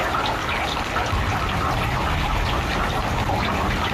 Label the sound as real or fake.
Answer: real